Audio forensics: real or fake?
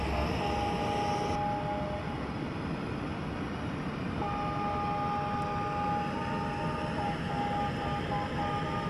real